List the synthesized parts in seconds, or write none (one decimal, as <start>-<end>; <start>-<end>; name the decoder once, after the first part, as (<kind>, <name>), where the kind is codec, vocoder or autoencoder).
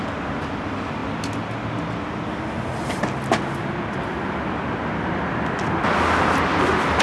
none